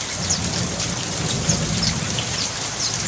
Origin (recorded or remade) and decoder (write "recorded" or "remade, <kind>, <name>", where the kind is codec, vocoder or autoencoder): recorded